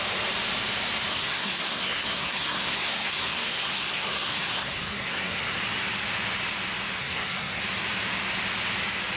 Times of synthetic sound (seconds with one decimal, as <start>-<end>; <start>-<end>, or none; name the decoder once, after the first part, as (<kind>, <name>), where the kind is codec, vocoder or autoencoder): 1.1-5.6 (codec, SNAC); 7.0-7.6